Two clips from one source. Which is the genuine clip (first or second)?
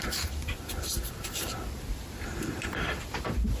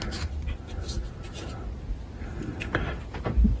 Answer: second